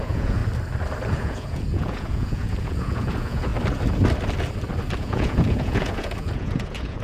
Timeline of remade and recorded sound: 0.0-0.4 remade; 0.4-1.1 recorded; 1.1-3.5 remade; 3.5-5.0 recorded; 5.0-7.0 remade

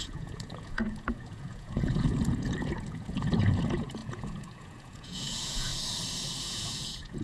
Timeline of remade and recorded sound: 0.0-5.7 remade; 5.7-6.4 recorded; 6.4-7.2 remade

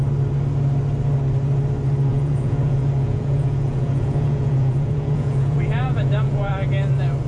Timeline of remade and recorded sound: 0.0-2.1 recorded; 2.1-6.5 remade; 6.5-7.3 recorded

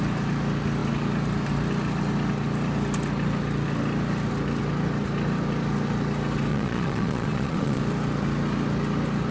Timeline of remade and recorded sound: 0.0-6.5 recorded; 6.5-7.8 remade; 7.8-9.3 recorded

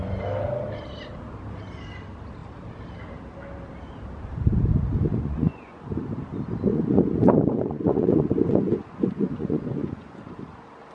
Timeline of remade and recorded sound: 0.0-5.1 recorded; 5.1-6.1 remade; 6.1-6.7 recorded; 6.7-10.4 remade; 10.4-10.9 recorded

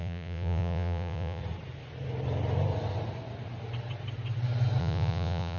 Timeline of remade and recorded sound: 0.0-1.4 remade; 1.4-4.8 recorded; 4.8-5.6 remade

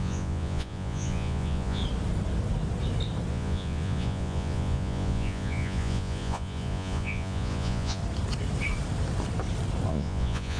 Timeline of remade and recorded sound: 0.0-1.8 remade; 1.8-3.3 recorded; 3.3-8.0 remade; 8.0-9.9 recorded; 9.9-10.6 remade